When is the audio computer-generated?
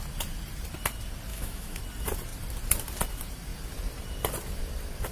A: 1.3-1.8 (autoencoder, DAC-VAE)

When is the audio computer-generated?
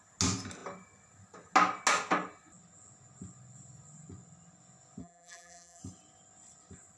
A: 5.0-5.8 (vocoder, BigVGAN v2)